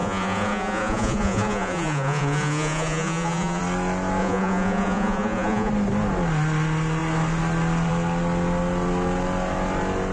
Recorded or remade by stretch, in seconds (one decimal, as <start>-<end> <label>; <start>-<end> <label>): 0.0-3.6 remade; 3.6-4.2 recorded; 4.2-5.7 remade; 5.7-10.1 recorded